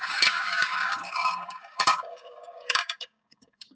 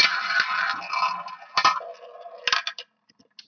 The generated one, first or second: first